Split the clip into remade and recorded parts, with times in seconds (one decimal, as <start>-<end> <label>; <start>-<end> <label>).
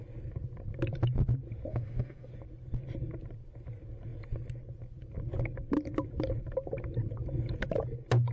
0.0-1.7 recorded; 1.7-2.3 remade; 2.3-8.3 recorded